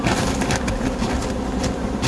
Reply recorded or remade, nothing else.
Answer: recorded